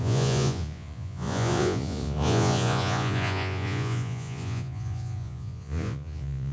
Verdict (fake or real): fake